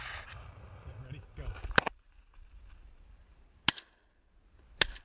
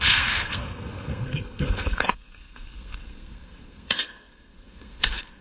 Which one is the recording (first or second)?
first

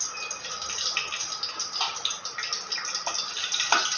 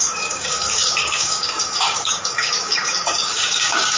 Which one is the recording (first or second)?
first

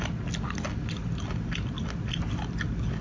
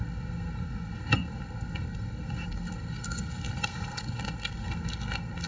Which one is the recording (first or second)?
first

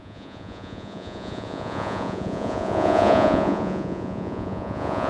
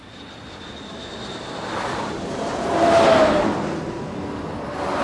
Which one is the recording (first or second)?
second